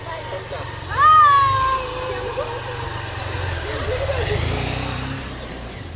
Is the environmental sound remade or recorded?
recorded